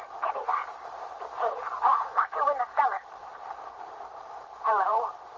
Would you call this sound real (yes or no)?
no